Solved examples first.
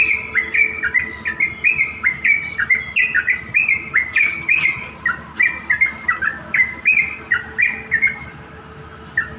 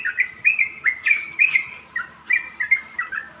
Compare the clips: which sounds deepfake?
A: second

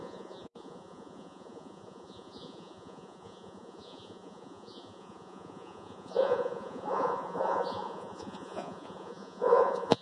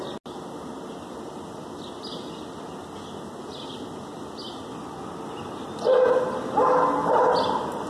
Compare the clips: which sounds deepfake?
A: first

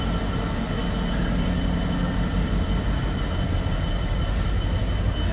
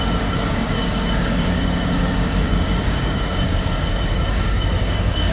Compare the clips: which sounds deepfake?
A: second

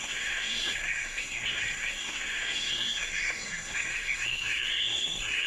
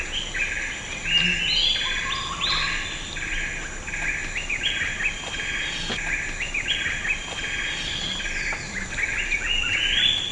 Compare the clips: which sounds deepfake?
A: first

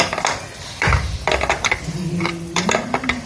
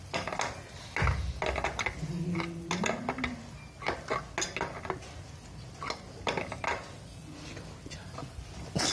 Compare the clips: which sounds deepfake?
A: first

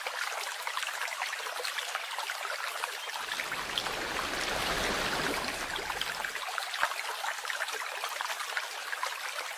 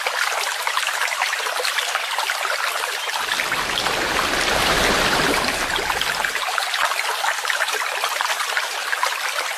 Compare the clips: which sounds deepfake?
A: second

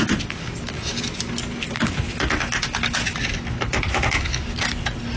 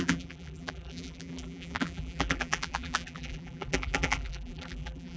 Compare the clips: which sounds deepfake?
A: second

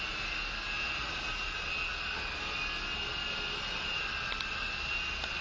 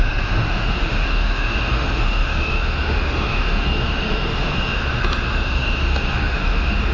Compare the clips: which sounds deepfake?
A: second